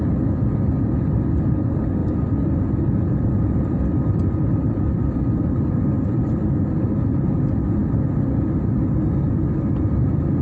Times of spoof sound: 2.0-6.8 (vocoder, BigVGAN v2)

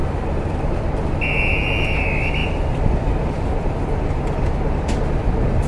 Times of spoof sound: 0.0-0.8 (vocoder, BigVGAN v2); 2.4-5.7

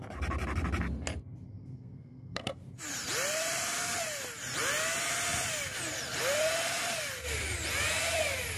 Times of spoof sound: 1.6-2.6 (codec, SNAC)